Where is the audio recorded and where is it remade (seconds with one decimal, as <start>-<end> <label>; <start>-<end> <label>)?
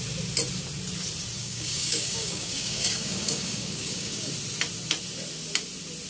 0.0-1.4 recorded; 1.4-4.3 remade; 4.3-6.1 recorded